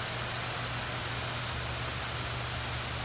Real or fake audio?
real